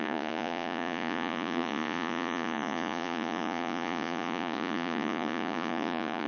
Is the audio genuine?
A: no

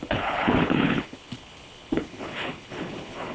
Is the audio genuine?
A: no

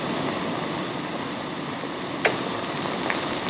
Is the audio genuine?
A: yes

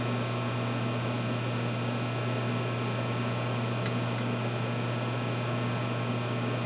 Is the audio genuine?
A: yes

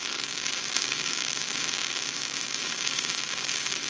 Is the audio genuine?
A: no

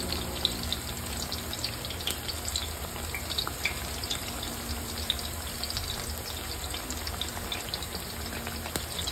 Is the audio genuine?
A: yes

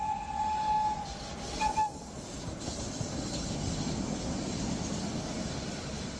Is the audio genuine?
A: yes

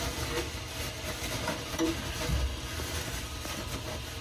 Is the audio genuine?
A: yes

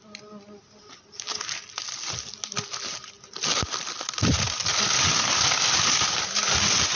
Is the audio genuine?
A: yes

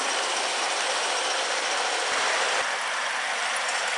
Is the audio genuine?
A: yes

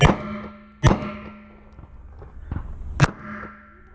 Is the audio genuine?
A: yes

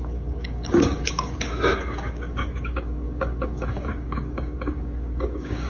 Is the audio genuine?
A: no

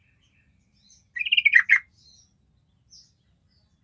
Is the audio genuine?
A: yes